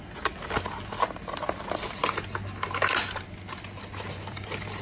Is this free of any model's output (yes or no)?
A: yes